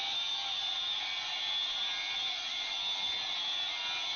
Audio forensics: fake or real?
real